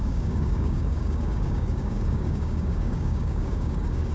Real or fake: fake